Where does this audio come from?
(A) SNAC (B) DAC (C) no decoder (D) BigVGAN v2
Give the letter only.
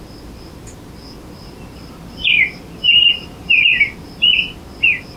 C